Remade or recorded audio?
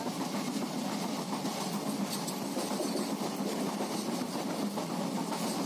recorded